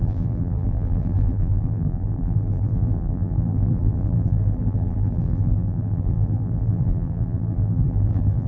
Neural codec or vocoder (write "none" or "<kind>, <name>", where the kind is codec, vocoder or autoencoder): vocoder, BigVGAN v2